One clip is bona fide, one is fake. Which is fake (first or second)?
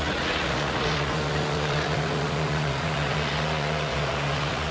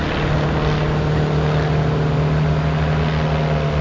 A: first